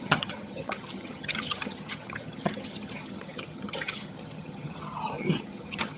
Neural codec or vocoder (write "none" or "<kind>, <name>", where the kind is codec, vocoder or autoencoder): vocoder, HiFi-GAN